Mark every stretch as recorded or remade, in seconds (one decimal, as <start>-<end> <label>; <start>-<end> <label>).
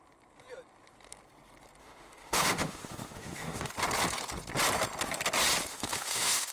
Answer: 0.0-1.8 recorded; 1.8-3.7 remade; 3.7-5.7 recorded; 5.7-6.5 remade